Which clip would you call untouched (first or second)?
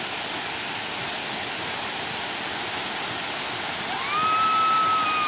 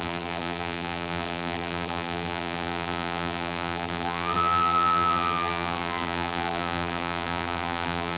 first